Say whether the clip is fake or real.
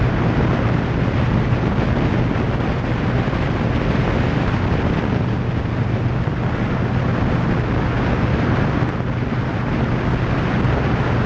real